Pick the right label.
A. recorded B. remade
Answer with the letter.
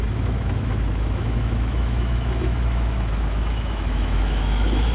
B